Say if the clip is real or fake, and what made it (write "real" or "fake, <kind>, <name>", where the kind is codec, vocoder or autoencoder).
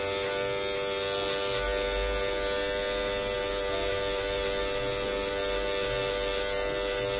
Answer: real